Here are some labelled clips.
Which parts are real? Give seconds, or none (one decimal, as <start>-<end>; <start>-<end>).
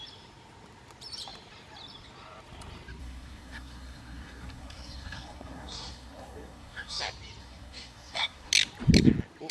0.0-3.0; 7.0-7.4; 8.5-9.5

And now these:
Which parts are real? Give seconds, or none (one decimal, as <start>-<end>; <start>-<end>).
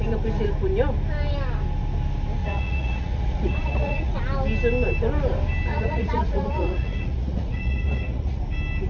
0.0-2.4; 4.2-5.7; 8.4-8.9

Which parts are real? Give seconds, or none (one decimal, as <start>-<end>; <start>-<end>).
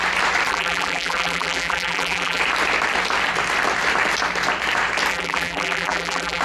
0.0-0.5; 2.4-5.1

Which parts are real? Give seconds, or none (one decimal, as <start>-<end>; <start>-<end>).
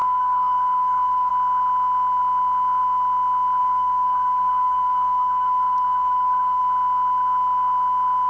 1.3-3.6; 6.6-8.3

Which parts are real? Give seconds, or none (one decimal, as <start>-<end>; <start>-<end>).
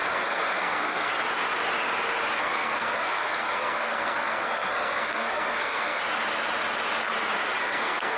1.1-2.4; 6.0-7.6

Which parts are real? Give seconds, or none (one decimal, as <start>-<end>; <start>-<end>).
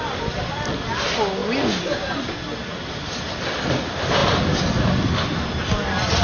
0.0-6.2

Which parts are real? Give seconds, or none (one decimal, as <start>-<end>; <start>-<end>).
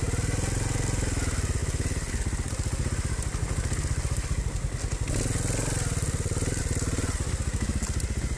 0.0-8.4